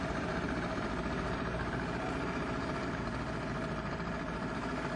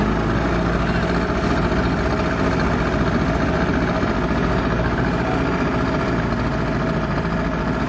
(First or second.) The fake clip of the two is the first